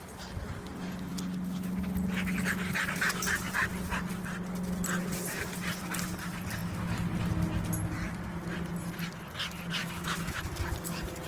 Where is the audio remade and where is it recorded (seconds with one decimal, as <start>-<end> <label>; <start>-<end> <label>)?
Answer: 0.0-9.8 recorded; 9.8-10.4 remade; 10.4-11.3 recorded